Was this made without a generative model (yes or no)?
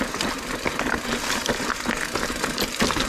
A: yes